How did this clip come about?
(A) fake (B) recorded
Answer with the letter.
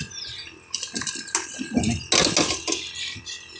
B